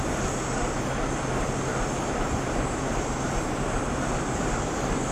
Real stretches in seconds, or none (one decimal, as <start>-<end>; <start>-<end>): 0.0-1.7